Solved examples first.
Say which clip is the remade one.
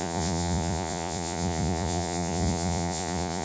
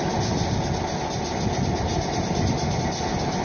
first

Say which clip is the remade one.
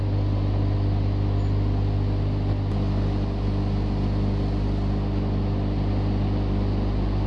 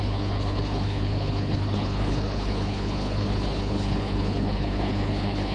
second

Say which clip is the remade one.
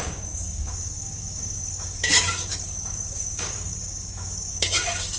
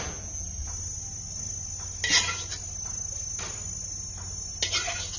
first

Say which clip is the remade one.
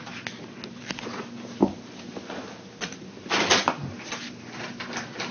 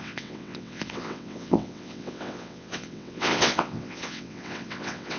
second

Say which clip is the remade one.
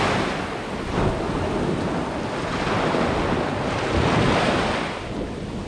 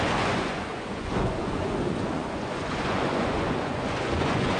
second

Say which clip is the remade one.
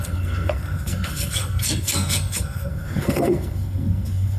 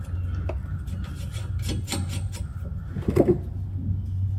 first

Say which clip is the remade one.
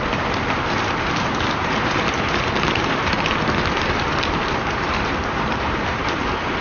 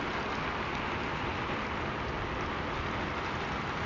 first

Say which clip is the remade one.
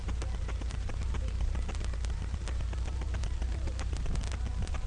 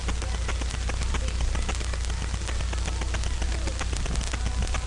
first